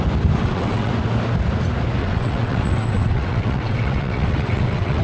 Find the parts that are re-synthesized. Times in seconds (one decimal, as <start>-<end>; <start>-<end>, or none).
0.4-0.9; 2.0-5.0